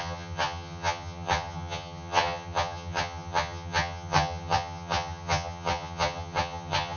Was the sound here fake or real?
fake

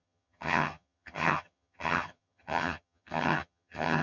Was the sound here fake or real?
fake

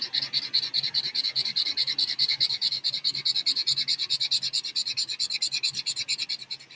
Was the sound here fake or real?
real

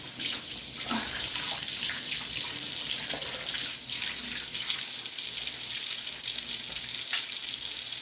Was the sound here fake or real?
real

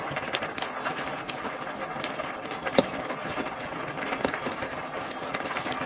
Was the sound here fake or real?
real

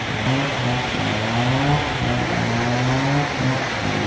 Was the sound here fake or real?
real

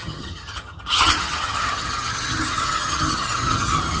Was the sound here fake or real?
fake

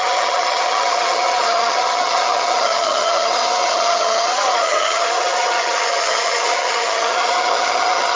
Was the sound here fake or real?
fake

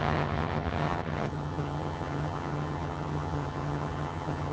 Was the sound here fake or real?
fake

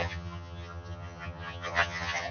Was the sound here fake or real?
fake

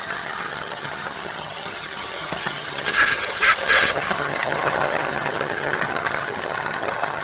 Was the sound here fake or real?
fake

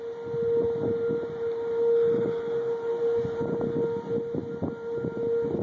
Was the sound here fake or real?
real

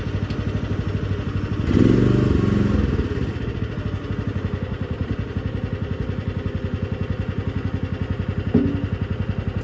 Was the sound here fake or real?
real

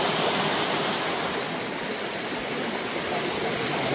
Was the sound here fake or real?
real